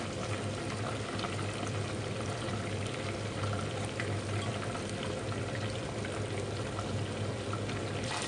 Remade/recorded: recorded